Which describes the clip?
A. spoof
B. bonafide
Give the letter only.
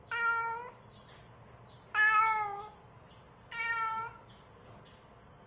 B